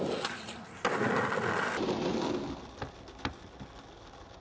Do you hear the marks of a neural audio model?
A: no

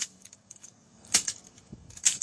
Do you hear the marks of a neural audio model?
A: yes